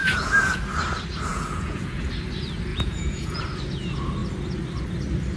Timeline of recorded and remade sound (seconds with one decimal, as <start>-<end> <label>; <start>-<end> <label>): 0.0-0.6 remade; 0.6-1.3 recorded; 1.3-2.1 remade; 2.1-2.7 recorded; 2.7-3.4 remade; 3.4-5.4 recorded